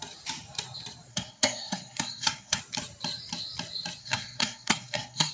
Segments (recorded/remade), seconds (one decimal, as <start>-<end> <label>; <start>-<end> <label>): 0.0-1.1 recorded; 1.1-2.6 remade; 2.6-4.0 recorded; 4.0-5.3 remade